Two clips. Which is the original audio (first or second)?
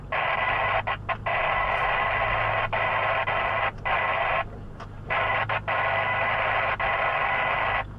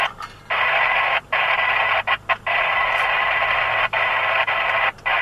first